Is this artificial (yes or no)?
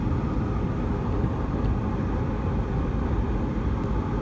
no